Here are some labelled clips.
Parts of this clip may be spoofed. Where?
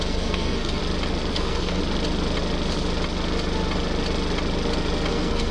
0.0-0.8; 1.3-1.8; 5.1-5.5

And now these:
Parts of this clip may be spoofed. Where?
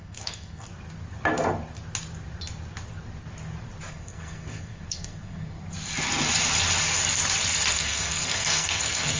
0.0-0.7; 3.9-5.6; 7.7-9.2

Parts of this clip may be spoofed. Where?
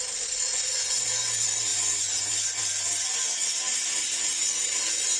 none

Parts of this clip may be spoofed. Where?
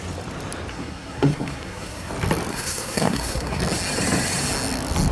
0.7-2.1; 2.5-3.6